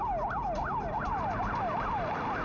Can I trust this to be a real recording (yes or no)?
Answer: yes